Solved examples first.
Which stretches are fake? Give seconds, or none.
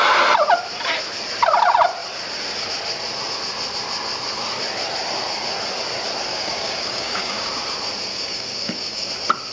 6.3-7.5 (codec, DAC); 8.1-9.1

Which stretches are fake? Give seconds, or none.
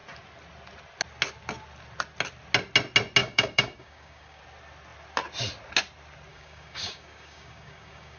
3.2-4.4 (codec, DAC); 6.3-8.2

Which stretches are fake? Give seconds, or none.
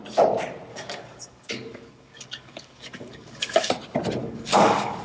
0.7-3.7 (codec, DAC); 4.2-5.0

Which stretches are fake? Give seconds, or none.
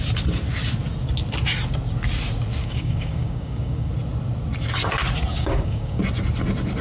2.6-3.9 (codec, DAC); 5.3-6.0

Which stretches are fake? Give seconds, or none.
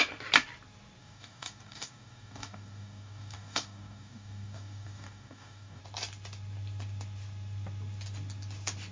1.0-5.8 (codec, DAC)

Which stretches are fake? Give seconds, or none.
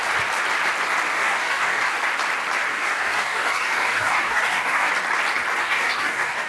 1.1-2.0 (codec, DAC); 2.7-4.9; 5.6-6.5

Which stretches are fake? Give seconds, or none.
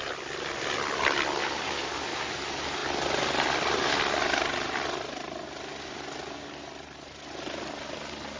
1.4-2.2 (codec, DAC)